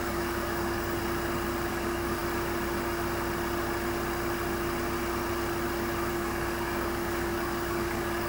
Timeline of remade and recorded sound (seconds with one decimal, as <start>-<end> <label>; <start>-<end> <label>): 0.0-1.0 remade; 1.0-1.7 recorded; 1.7-2.2 remade; 2.2-6.1 recorded; 6.1-8.3 remade